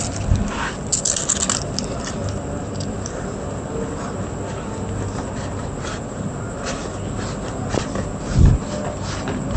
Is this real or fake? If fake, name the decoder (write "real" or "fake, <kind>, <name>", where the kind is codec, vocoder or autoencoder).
real